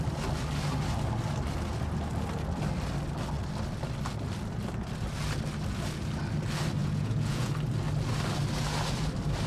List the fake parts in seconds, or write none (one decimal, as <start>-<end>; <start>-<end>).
6.8-7.5